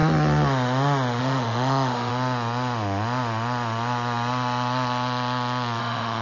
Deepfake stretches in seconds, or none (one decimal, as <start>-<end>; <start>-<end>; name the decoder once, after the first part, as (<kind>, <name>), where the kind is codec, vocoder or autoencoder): 1.2-2.1 (autoencoder, DAC-VAE); 5.8-6.2